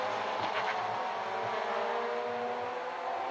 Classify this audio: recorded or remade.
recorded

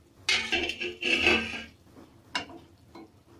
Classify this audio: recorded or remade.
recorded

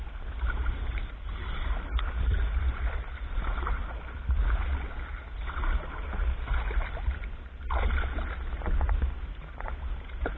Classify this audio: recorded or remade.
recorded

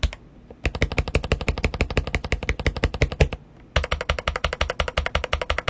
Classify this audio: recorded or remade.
recorded